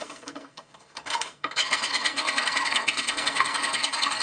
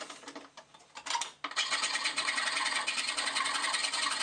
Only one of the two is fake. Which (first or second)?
first